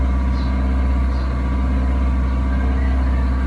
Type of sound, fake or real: real